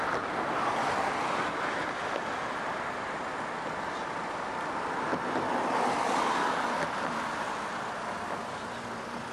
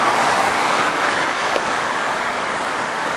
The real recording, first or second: first